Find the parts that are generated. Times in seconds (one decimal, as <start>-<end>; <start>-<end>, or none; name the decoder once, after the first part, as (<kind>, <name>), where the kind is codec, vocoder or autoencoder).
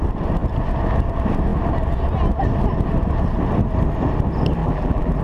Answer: 4.6-5.2 (vocoder, BigVGAN v2)